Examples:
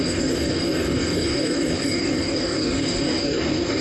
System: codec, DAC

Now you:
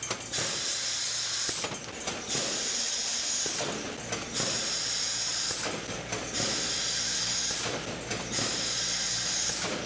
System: none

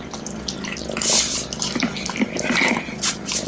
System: none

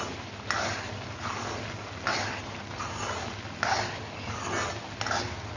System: none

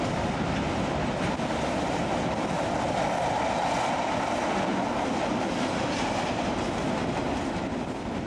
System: none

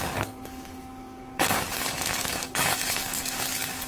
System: codec, DAC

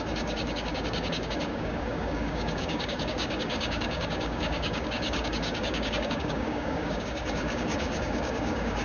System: codec, DAC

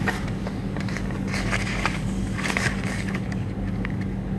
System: codec, DAC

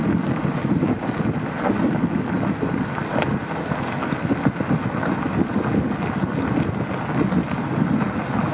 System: none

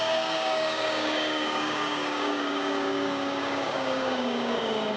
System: codec, DAC